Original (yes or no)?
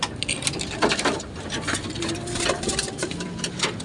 no